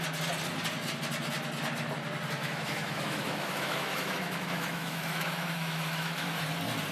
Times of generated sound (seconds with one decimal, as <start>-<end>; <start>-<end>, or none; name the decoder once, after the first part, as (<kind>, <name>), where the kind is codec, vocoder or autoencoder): 2.4-6.4 (autoencoder, DAC-VAE)